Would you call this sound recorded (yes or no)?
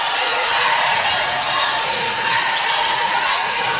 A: no